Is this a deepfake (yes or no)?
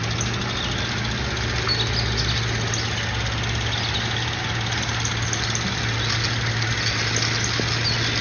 no